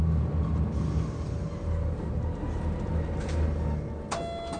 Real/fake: real